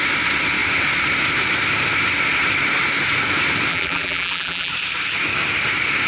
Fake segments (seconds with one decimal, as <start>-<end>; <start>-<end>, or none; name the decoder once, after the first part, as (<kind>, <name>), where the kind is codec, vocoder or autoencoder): 3.7-4.7 (vocoder, BigVGAN v2)

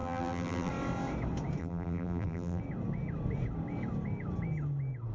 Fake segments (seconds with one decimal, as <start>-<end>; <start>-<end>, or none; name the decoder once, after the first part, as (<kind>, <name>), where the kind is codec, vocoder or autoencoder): 0.0-0.7 (vocoder, BigVGAN v2); 1.6-2.6

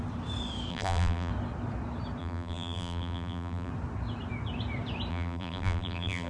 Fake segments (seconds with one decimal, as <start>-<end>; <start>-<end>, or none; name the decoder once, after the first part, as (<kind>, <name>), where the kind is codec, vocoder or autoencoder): 0.7-1.3 (vocoder, BigVGAN v2); 2.2-3.7; 5.1-6.3

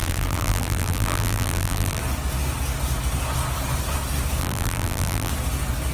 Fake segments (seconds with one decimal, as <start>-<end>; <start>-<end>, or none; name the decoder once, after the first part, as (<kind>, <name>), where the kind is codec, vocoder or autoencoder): 0.0-2.0 (vocoder, BigVGAN v2); 4.4-5.3

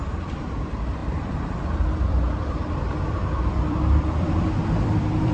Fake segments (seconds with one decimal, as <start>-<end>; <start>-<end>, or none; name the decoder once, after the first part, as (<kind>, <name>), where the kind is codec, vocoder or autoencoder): 0.0-5.3 (vocoder, BigVGAN v2)